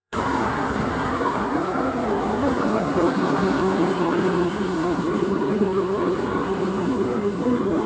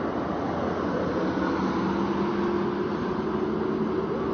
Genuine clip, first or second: second